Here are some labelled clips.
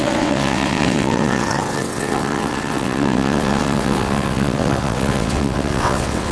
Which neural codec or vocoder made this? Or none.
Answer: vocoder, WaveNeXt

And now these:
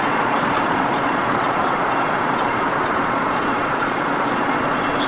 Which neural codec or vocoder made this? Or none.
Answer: vocoder, Vocos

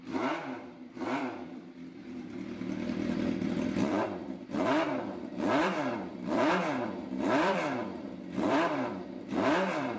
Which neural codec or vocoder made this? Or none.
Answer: vocoder, BigVGAN v2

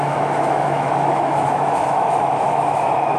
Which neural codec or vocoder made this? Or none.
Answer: autoencoder, DAC-VAE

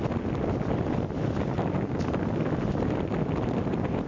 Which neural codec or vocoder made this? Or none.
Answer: none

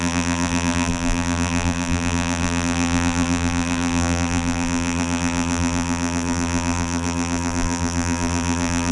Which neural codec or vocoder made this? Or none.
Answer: vocoder, BigVGAN v2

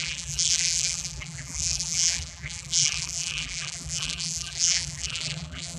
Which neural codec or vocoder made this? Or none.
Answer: vocoder, BigVGAN v2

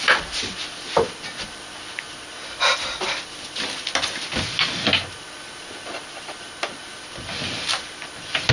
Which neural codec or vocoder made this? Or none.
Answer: none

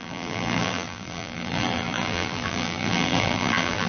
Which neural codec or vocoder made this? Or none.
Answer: vocoder, BigVGAN v2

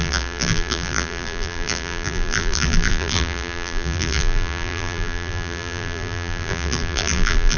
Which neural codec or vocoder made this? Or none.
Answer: vocoder, BigVGAN v2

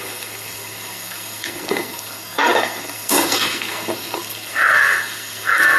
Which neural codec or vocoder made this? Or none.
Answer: codec, SNAC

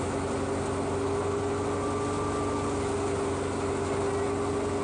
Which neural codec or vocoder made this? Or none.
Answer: none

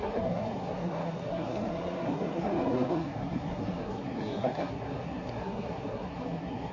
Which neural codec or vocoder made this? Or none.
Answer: codec, SNAC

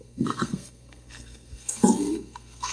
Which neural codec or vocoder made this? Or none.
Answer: codec, SNAC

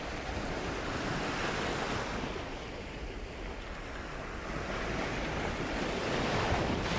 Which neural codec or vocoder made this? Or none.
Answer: none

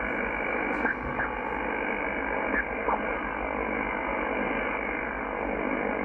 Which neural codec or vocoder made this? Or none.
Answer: none